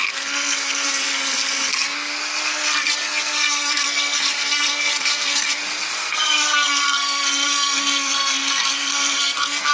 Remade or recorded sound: remade